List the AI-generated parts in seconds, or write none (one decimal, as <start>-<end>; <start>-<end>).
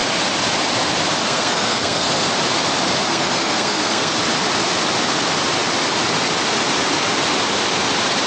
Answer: 1.2-2.3; 3.1-4.2